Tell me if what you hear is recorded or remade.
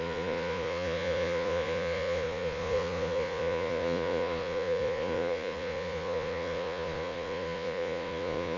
remade